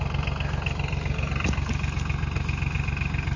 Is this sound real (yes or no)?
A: yes